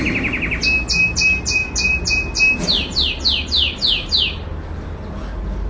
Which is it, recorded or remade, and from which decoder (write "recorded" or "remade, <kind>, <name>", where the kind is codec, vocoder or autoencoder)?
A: recorded